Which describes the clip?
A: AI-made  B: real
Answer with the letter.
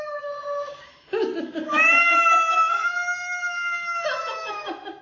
A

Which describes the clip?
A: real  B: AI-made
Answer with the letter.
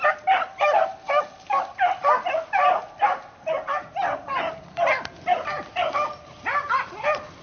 A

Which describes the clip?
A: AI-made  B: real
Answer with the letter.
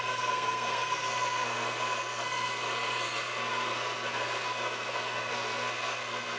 A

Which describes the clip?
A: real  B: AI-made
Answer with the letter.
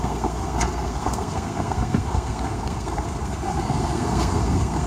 B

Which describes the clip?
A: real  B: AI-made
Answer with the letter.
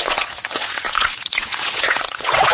B